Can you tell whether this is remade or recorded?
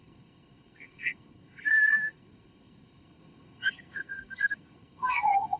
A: remade